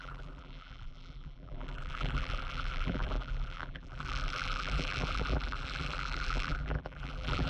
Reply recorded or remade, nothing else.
remade